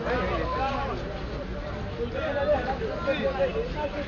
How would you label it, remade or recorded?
recorded